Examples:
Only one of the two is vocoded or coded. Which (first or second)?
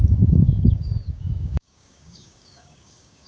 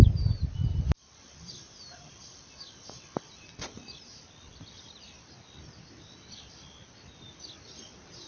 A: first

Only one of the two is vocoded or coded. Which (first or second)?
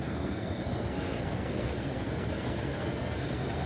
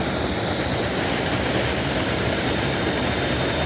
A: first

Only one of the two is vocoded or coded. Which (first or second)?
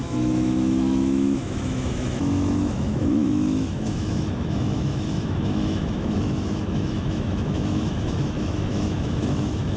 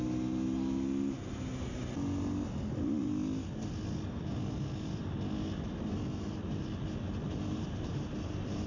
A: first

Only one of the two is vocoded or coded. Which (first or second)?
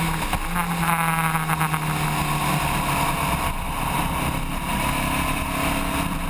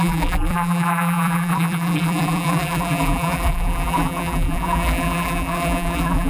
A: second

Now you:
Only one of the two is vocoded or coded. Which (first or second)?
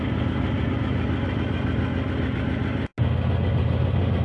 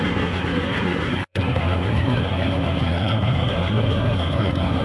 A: second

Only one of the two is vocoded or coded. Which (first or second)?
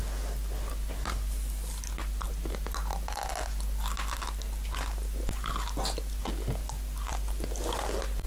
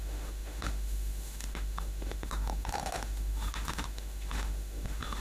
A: second